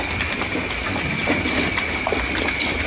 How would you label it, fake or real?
fake